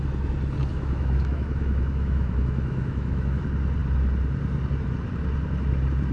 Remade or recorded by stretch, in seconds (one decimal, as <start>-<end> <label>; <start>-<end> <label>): 0.0-0.7 recorded; 0.7-3.4 remade; 3.4-6.1 recorded